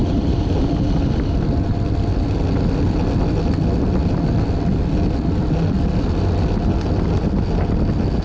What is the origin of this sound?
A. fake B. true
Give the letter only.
B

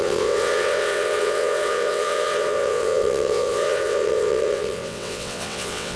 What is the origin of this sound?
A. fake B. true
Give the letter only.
A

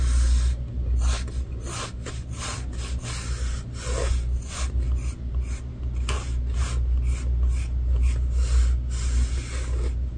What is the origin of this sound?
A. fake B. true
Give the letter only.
B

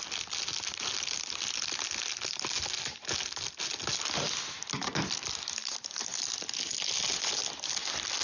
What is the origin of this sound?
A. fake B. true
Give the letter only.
B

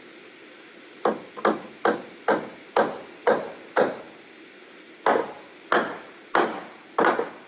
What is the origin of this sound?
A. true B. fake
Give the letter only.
A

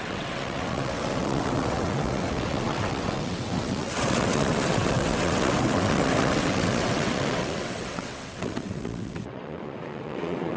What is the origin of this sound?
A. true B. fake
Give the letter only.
B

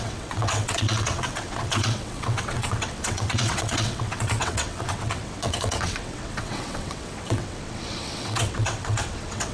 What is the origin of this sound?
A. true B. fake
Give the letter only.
B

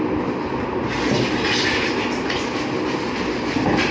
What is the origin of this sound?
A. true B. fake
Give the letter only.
A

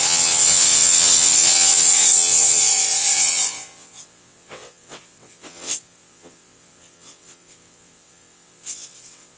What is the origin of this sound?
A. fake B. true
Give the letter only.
A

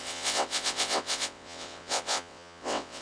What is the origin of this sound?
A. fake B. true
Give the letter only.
A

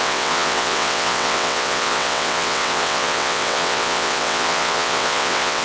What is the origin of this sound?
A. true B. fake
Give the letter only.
B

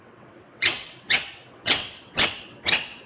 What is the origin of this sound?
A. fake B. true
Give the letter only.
A